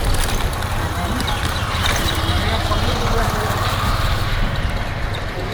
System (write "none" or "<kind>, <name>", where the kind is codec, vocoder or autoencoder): vocoder, BigVGAN v2